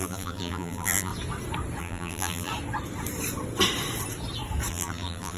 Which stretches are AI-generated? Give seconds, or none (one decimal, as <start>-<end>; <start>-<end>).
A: 0.0-1.1; 1.8-2.5; 4.7-5.4